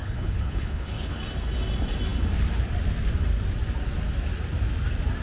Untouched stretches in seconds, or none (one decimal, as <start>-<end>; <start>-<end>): 1.2-5.2